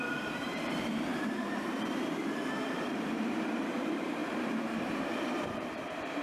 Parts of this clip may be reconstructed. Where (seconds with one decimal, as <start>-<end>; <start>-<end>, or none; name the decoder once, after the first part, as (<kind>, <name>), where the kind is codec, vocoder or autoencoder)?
0.0-4.2 (vocoder, BigVGAN v2); 5.5-6.2